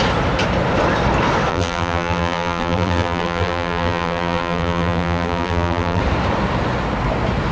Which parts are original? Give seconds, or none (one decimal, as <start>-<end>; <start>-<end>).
0.0-1.5; 6.0-7.5